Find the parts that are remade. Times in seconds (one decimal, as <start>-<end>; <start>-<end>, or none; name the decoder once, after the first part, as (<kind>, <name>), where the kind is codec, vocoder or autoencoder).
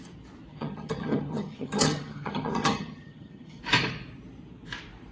0.5-3.6 (vocoder, HiFi-GAN)